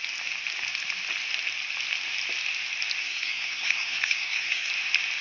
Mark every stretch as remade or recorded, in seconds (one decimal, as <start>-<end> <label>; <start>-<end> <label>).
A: 0.0-3.0 recorded; 3.0-4.7 remade; 4.7-5.2 recorded